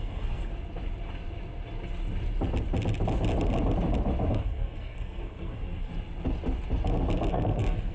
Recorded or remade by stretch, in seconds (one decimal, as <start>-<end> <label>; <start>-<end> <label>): 0.0-0.5 remade; 0.5-4.3 recorded; 4.3-5.9 remade; 5.9-7.3 recorded; 7.3-7.9 remade